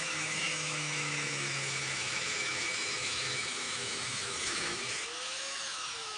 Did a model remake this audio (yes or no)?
yes